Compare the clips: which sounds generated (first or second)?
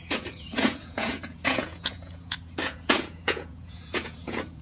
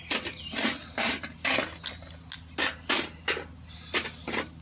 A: first